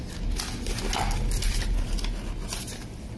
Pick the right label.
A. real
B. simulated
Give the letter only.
A